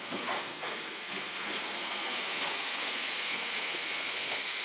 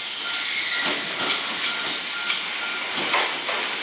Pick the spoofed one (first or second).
first